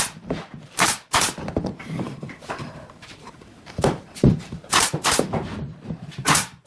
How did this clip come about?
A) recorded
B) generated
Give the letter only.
B